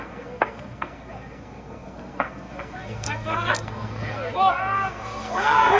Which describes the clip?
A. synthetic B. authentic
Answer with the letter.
A